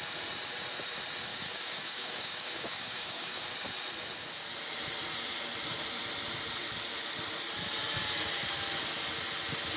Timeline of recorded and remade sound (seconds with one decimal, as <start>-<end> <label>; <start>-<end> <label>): 0.0-1.3 recorded; 1.3-3.5 remade; 3.5-9.8 recorded